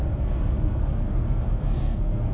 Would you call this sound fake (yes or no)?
yes